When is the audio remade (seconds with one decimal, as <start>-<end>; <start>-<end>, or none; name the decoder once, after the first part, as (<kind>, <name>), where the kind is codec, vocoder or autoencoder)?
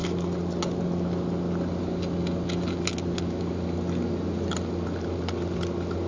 none